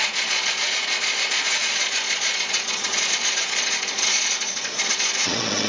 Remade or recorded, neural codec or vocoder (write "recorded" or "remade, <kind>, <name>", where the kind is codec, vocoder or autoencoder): remade, vocoder, Vocos